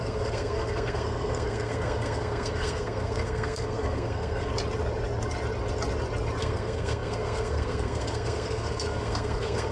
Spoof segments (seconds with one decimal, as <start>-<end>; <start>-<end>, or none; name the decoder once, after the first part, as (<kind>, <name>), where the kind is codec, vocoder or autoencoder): 0.0-4.5 (codec, SNAC); 6.4-9.7